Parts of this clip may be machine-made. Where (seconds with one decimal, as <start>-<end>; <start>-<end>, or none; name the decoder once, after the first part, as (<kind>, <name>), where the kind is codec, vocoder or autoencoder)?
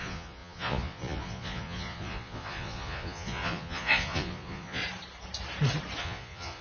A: 0.0-4.8 (vocoder, Vocos); 6.0-6.6